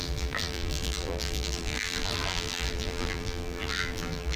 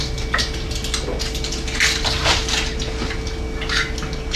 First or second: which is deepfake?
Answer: first